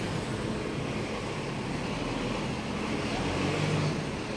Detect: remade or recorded recorded